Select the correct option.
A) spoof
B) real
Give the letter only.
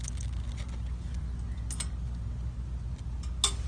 B